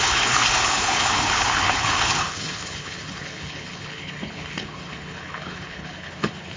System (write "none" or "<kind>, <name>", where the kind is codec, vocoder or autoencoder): codec, HILCodec